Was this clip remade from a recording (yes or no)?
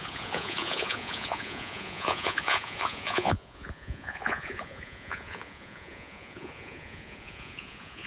yes